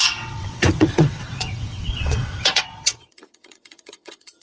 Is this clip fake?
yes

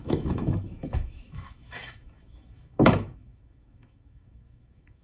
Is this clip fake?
yes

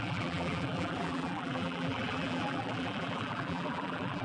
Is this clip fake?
yes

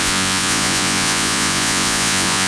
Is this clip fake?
yes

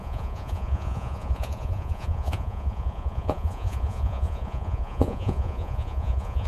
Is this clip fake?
yes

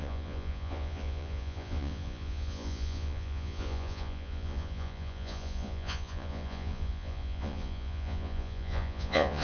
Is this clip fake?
yes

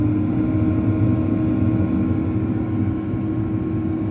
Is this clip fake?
no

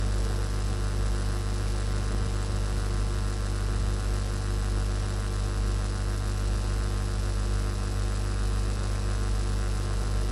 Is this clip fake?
no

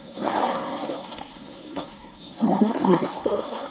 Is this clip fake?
yes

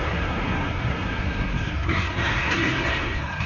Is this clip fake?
yes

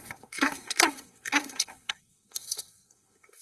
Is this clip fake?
yes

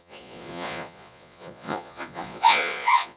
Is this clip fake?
yes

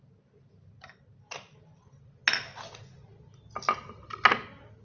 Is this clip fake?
no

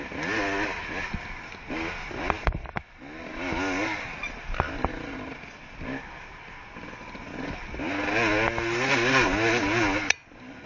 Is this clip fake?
no